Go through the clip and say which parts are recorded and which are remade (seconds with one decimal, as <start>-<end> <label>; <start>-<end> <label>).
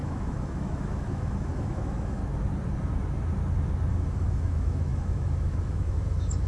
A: 0.0-2.2 remade; 2.2-3.9 recorded; 3.9-6.5 remade